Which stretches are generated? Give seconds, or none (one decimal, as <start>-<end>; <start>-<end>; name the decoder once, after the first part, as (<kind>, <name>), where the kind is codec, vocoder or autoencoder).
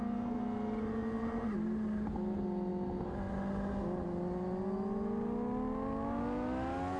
none